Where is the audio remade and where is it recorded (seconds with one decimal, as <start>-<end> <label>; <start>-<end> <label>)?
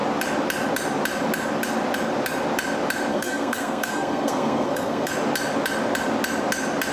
0.0-3.1 recorded; 3.1-5.1 remade; 5.1-6.9 recorded